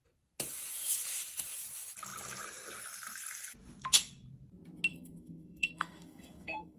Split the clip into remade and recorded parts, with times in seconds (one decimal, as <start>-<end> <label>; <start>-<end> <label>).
0.0-4.9 recorded; 4.9-6.8 remade